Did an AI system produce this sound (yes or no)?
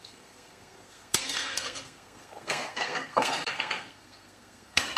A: yes